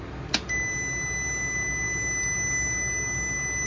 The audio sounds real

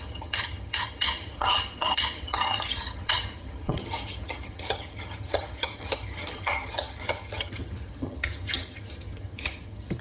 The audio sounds fake